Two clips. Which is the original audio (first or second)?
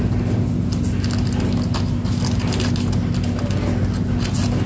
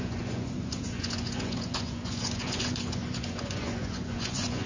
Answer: first